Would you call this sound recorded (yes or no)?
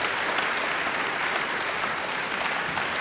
yes